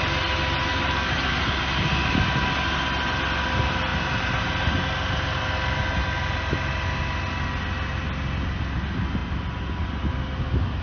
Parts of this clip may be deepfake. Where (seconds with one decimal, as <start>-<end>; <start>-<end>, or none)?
0.7-1.3